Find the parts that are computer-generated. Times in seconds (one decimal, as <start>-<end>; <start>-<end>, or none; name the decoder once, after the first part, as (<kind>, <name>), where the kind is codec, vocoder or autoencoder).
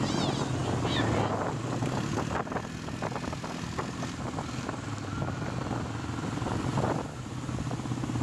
none